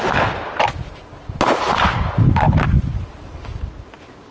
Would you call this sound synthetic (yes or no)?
no